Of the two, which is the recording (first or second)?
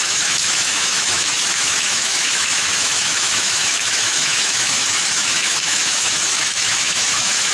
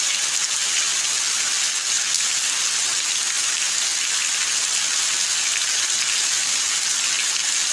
second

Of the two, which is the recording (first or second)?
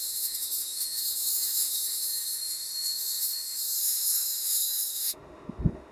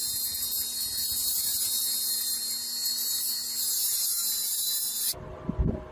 second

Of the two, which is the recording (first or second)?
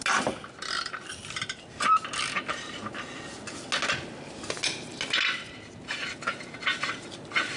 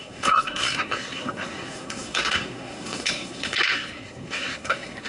first